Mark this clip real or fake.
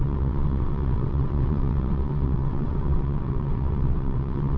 fake